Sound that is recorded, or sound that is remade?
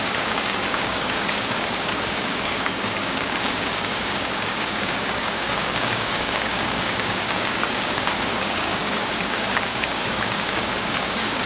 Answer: remade